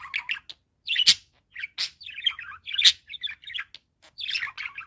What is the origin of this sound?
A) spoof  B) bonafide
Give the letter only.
B